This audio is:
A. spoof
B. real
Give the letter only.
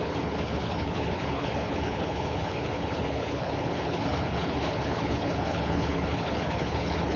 A